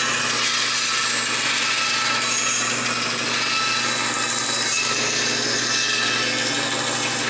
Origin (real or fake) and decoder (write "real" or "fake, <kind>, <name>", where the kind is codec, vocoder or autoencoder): real